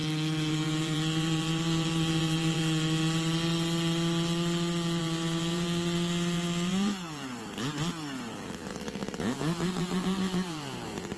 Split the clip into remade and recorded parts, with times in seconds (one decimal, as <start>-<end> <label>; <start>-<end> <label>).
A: 0.0-0.5 recorded; 0.5-2.6 remade; 2.6-5.0 recorded; 5.0-7.3 remade; 7.3-8.3 recorded; 8.3-11.2 remade